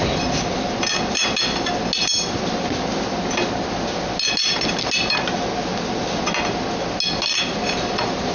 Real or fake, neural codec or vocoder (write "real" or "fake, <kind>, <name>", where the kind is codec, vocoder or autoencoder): real